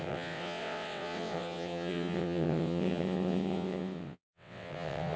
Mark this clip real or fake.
fake